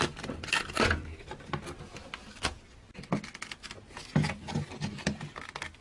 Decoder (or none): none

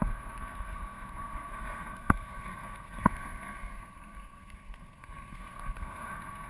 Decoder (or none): codec, SNAC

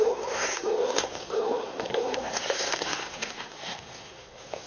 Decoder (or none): codec, SNAC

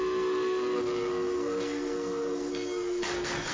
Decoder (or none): codec, SNAC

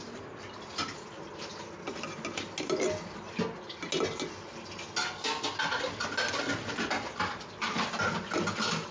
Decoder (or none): none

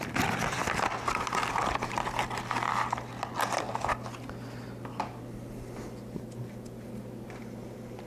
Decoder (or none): none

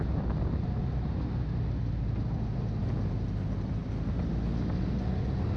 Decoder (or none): none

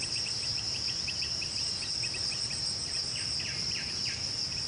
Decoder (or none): none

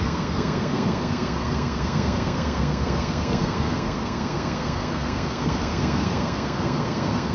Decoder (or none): codec, SNAC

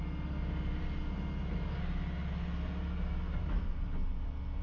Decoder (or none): none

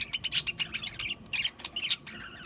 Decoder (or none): none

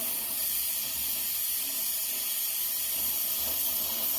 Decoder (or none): none